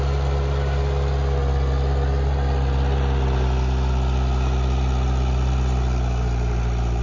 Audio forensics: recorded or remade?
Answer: recorded